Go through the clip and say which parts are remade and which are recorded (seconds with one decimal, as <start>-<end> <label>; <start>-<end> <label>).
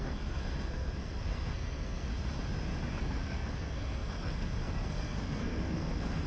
0.0-2.1 remade; 2.1-3.0 recorded; 3.0-6.3 remade